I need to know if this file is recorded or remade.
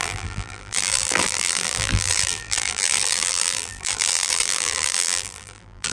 remade